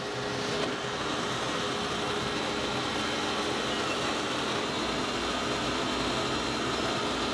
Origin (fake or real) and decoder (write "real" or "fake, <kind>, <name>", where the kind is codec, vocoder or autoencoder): real